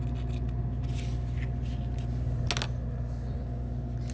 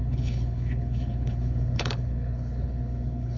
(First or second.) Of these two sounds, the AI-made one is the second